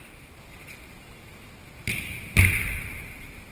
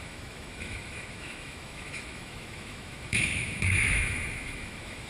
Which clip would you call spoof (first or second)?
second